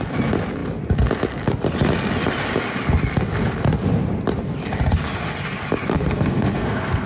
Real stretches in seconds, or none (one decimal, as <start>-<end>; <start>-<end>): 0.0-5.9